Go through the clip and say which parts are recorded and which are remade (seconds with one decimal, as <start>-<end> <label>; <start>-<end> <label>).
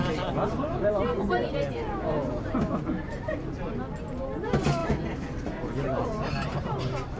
0.0-7.2 recorded